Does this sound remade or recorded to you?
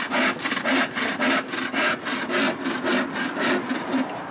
recorded